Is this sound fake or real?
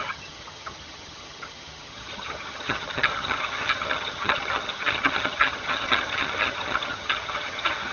fake